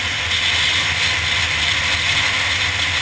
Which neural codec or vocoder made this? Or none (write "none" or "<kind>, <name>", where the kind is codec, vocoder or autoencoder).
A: none